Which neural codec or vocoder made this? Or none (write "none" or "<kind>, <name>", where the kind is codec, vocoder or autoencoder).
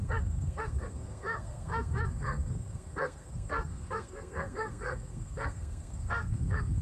codec, SNAC